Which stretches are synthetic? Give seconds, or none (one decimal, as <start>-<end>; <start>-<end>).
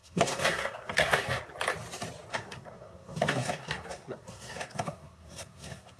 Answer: 0.0-1.4; 2.3-6.0